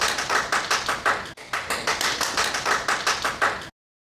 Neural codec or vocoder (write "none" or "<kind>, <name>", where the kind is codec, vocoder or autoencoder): none